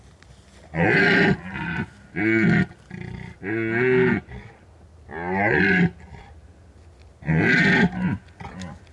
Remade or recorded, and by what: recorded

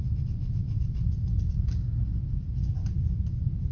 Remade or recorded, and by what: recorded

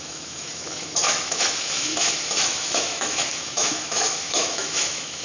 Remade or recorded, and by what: remade, autoencoder, DAC-VAE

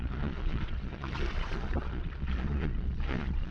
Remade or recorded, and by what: remade, vocoder, Vocos